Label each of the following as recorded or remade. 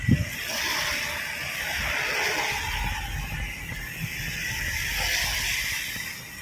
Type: recorded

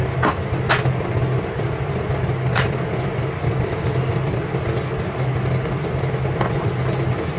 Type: recorded